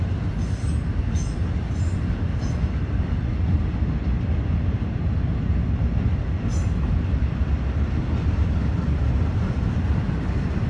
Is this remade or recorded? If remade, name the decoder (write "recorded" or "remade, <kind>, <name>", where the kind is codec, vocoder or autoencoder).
recorded